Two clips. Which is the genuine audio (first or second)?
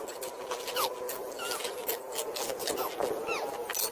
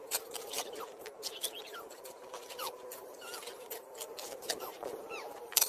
first